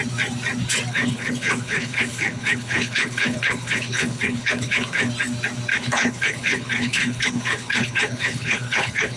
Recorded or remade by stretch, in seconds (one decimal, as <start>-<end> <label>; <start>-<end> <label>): 0.0-0.9 recorded; 0.9-5.1 remade; 5.1-5.7 recorded; 5.7-9.2 remade